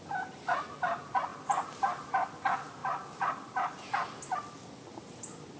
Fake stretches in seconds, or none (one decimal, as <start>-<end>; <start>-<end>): none